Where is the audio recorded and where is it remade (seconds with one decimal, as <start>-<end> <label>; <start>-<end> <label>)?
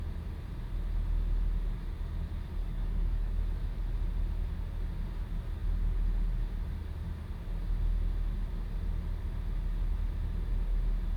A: 0.0-2.6 recorded; 2.6-3.4 remade; 3.4-11.2 recorded